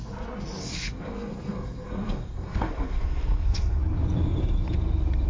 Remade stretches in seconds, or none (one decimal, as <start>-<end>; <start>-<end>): 0.6-3.8